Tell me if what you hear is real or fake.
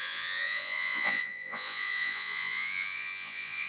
fake